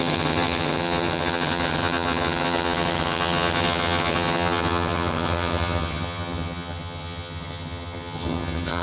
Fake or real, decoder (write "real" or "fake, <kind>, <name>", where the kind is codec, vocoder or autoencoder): fake, vocoder, HiFi-GAN